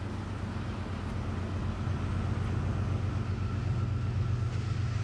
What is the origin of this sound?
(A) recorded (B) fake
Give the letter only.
A